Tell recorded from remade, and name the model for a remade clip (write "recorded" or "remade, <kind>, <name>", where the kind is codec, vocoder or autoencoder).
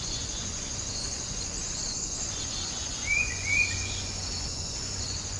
remade, vocoder, Vocos